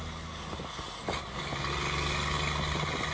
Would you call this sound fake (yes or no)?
no